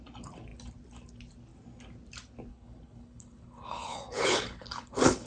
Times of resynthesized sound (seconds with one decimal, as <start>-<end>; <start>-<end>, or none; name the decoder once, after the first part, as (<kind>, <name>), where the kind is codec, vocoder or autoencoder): 2.5-5.3 (codec, HILCodec)